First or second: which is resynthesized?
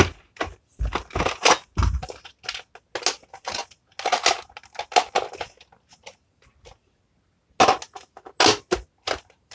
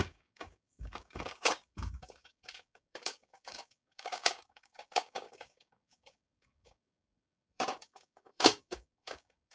second